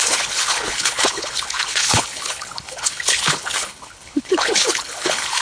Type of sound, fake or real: fake